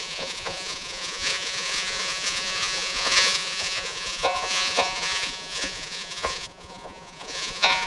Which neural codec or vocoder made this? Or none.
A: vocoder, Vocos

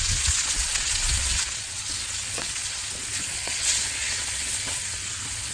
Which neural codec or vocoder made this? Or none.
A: vocoder, WaveNeXt